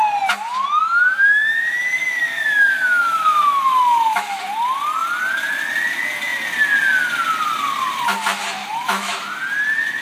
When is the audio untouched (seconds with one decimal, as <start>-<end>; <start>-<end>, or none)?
0.0-0.8; 4.4-8.6; 9.3-10.0